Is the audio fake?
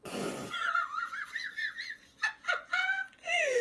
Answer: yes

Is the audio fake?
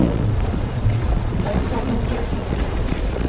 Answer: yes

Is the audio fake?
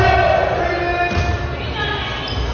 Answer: no